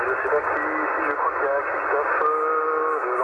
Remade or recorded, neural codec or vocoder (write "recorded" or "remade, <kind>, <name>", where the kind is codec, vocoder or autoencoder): recorded